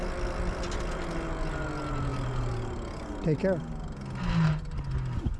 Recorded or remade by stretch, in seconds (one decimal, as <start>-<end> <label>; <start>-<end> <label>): 0.0-5.4 recorded